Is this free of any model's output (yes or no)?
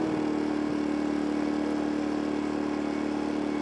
yes